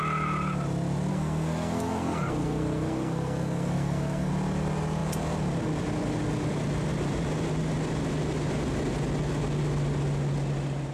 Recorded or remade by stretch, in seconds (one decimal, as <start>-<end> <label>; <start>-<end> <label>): 0.0-1.1 recorded; 1.1-4.3 remade; 4.3-10.9 recorded